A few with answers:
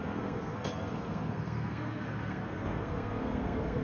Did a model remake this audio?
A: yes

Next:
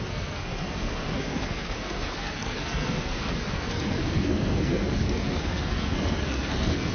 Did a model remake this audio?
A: yes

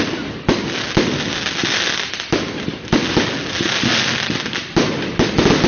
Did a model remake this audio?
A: no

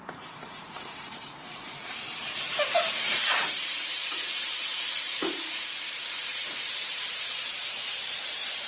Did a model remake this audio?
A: yes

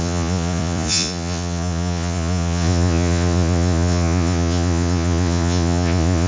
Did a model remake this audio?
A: yes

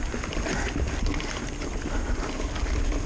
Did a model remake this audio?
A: no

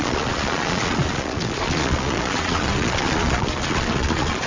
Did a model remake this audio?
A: yes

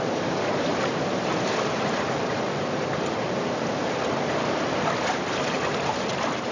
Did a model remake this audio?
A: yes